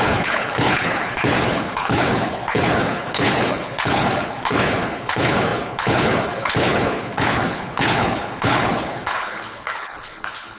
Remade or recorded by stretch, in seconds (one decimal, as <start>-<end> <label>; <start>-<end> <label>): 0.0-10.6 remade